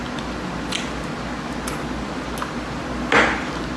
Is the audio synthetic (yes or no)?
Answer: no